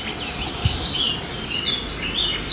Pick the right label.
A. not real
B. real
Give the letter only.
B